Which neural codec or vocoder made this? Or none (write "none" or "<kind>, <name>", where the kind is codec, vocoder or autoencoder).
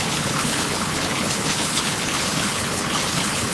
codec, HILCodec